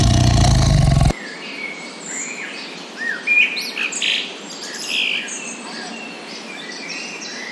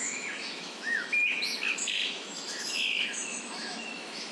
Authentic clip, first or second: first